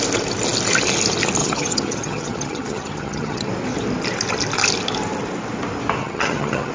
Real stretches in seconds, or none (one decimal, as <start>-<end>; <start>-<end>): 0.0-1.4; 3.5-6.0